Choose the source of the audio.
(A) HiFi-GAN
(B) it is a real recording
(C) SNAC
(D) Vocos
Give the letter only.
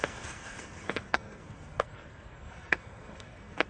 C